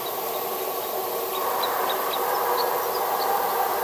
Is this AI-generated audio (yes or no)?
no